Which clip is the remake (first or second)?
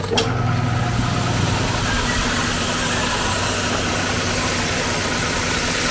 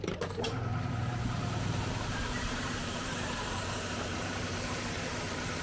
second